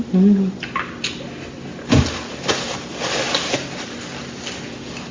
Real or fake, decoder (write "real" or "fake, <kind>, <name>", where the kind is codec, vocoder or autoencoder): real